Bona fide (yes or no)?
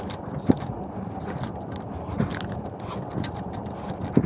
yes